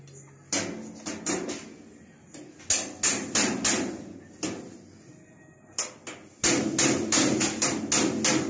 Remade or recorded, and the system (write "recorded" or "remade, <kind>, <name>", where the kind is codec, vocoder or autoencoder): recorded